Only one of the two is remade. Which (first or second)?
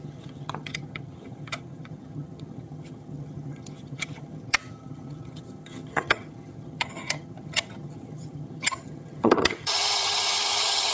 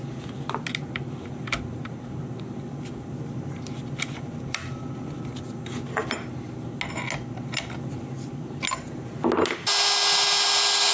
first